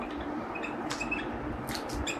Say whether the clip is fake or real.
real